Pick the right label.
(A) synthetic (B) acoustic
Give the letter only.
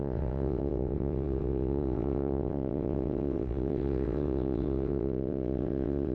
A